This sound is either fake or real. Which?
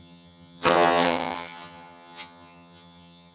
fake